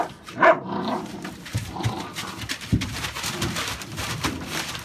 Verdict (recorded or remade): remade